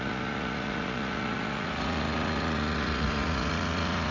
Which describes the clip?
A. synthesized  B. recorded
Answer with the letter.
A